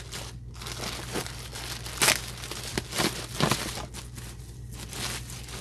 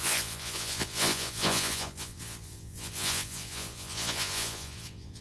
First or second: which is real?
first